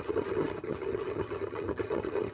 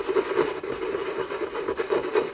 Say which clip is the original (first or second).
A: second